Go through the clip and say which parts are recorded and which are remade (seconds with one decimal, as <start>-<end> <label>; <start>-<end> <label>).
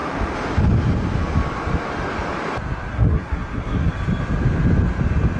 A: 0.0-2.9 recorded; 2.9-3.9 remade; 3.9-5.4 recorded